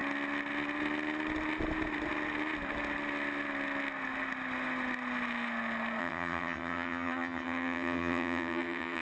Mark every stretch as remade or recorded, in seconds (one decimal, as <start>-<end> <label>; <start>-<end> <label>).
0.0-6.0 recorded; 6.0-9.0 remade